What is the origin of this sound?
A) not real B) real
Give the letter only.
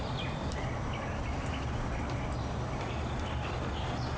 B